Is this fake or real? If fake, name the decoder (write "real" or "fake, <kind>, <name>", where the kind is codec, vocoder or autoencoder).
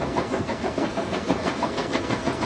fake, codec, SNAC